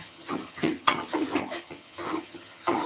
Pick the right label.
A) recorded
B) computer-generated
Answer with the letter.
B